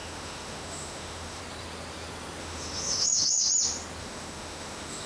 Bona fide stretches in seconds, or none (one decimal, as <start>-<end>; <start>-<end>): 1.4-2.4; 3.5-4.0